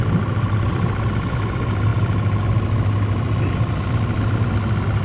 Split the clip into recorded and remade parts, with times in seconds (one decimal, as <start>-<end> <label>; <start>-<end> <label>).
0.0-5.0 recorded